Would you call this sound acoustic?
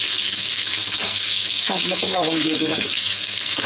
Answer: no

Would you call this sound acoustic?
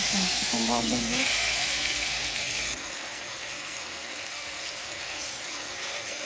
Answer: no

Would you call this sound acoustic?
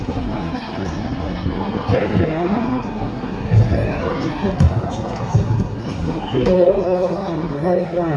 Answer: no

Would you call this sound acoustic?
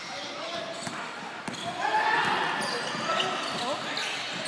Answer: yes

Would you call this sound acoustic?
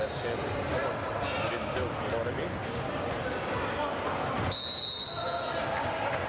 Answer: yes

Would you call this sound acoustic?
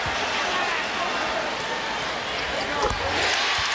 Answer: yes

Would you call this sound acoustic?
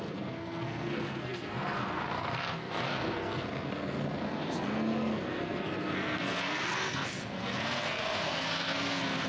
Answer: no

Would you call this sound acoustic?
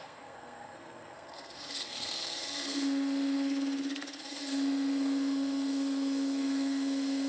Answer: no